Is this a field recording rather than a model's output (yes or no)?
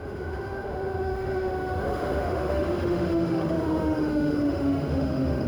no